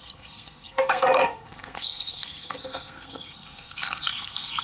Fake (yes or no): yes